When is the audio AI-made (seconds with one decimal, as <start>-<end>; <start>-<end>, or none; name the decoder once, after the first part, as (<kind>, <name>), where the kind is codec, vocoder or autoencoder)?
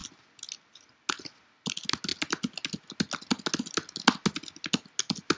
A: none